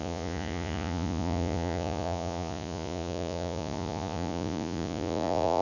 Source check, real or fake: fake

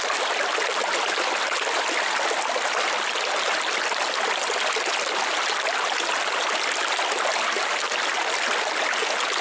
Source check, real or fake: real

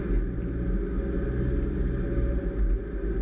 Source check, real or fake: real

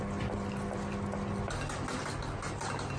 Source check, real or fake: real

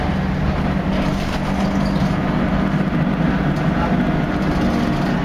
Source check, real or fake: real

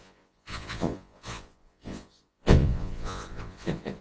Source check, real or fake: fake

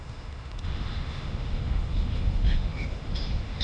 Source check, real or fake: fake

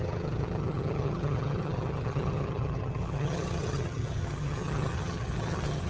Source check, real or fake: fake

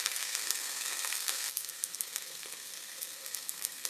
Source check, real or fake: fake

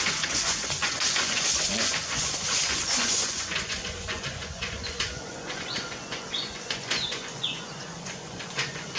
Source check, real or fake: fake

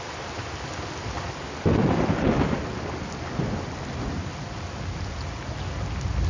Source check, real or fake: real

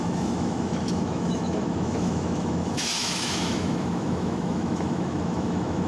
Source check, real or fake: fake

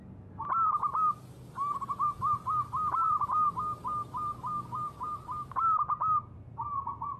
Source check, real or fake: real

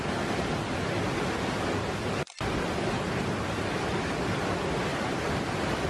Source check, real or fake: real